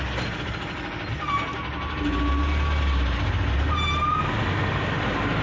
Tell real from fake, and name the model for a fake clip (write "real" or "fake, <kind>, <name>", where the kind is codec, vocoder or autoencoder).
real